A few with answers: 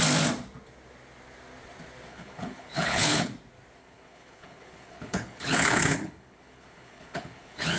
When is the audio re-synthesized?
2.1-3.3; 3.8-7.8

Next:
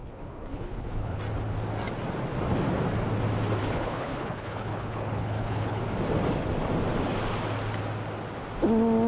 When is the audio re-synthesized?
0.0-1.2; 3.6-5.8

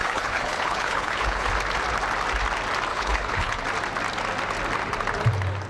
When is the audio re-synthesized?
0.0-1.5; 2.9-3.6

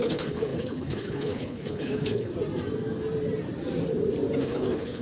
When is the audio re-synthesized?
0.0-2.3; 4.4-5.0

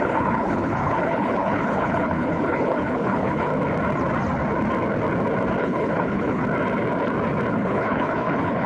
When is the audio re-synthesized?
0.0-3.5; 5.6-6.4; 7.5-8.7